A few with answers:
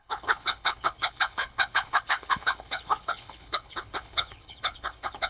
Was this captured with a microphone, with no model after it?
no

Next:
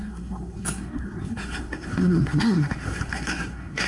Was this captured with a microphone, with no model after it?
no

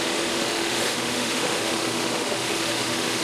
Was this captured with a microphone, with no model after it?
no